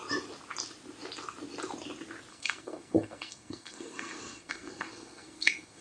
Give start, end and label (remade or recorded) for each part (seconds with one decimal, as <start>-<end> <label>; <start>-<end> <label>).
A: 0.0-2.3 recorded; 2.3-5.8 remade